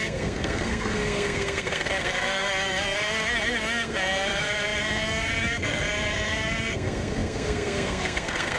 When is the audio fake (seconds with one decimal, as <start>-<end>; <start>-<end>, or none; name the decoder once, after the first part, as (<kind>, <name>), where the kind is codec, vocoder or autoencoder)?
0.0-8.6 (codec, SNAC)